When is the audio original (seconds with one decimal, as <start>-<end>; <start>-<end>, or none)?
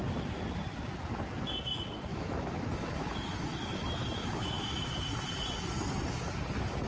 0.0-2.1; 5.0-6.9